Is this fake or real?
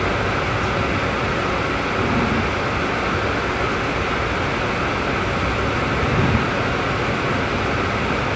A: real